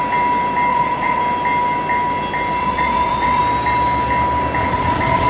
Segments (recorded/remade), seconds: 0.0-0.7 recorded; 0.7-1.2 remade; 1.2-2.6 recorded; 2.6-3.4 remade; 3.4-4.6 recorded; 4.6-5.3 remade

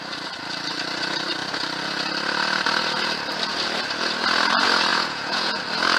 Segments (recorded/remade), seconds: 0.0-4.9 recorded; 4.9-5.6 remade; 5.6-6.0 recorded

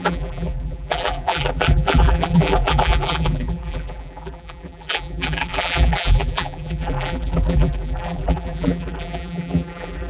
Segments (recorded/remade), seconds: 0.0-10.1 remade

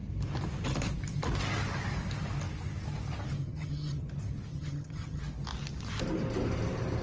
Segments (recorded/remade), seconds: 0.0-3.4 recorded; 3.4-4.0 remade; 4.0-4.5 recorded; 4.5-5.2 remade; 5.2-7.0 recorded

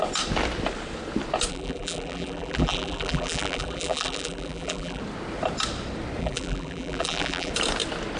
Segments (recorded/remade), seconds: 0.0-1.5 recorded; 1.5-5.0 remade; 5.0-6.2 recorded; 6.2-7.5 remade; 7.5-8.2 recorded